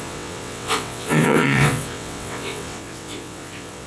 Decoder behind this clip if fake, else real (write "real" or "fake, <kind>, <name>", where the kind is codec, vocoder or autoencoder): fake, vocoder, WaveNeXt